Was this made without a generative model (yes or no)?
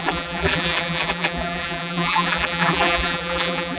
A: no